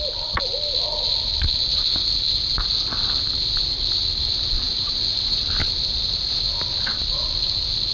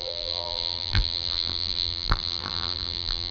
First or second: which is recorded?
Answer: first